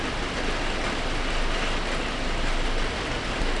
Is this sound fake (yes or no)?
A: no